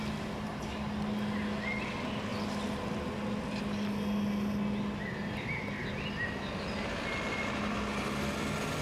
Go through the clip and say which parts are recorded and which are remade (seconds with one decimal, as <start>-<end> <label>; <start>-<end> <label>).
0.0-8.8 recorded